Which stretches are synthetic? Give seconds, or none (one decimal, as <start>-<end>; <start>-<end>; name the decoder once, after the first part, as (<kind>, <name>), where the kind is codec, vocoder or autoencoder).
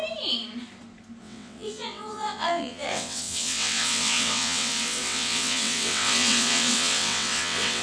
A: 1.2-7.8 (vocoder, WaveNeXt)